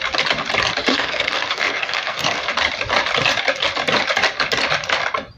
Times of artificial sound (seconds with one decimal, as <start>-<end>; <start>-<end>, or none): 0.9-2.5